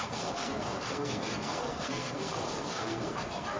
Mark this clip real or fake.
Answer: fake